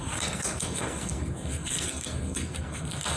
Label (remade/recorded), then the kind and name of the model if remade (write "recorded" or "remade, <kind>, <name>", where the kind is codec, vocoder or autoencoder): remade, codec, SNAC